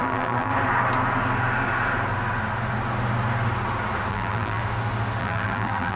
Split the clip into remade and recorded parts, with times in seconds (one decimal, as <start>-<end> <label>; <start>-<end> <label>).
0.0-0.5 remade; 0.5-4.1 recorded; 4.1-4.6 remade; 4.6-5.2 recorded; 5.2-6.0 remade